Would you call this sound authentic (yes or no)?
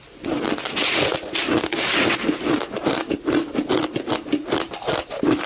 yes